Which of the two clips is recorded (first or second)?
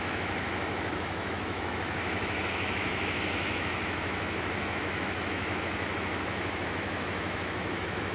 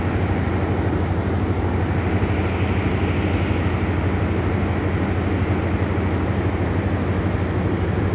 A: second